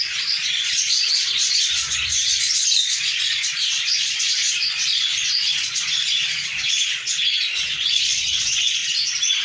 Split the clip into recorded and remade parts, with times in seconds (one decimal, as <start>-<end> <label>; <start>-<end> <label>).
0.0-8.8 remade; 8.8-9.4 recorded

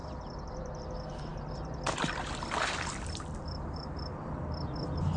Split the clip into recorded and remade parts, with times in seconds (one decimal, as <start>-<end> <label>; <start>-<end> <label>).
0.0-0.8 remade; 0.8-1.3 recorded; 1.3-4.4 remade; 4.4-5.2 recorded